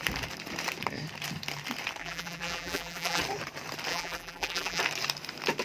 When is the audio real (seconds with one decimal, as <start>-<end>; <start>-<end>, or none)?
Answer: 0.0-2.0; 3.2-3.9; 4.8-5.6